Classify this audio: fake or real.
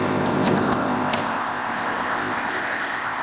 fake